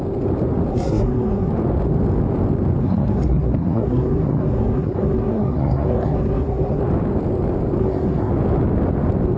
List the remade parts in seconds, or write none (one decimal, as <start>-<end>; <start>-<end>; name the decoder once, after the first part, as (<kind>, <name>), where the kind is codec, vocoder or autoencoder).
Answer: 0.7-1.5 (codec, SNAC); 2.8-6.8; 7.8-8.3